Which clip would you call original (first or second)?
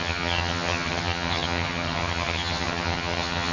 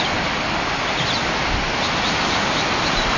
second